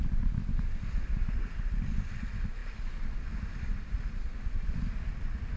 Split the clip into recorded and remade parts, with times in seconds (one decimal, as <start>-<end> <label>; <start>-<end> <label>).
0.0-5.6 recorded